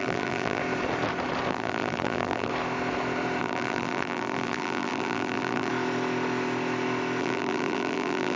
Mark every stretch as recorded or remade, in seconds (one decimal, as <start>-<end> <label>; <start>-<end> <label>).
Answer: 0.0-0.6 remade; 0.6-1.5 recorded; 1.5-2.5 remade; 2.5-3.4 recorded; 3.4-5.7 remade; 5.7-7.2 recorded; 7.2-8.4 remade